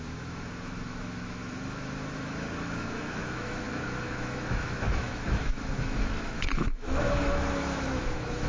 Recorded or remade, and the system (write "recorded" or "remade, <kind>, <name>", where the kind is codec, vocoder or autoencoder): remade, autoencoder, DAC-VAE